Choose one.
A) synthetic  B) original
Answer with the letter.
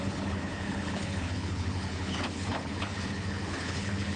A